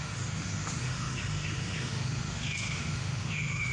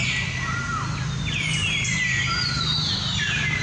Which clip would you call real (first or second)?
second